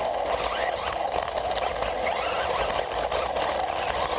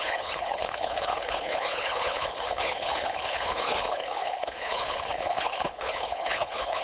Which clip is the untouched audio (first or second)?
first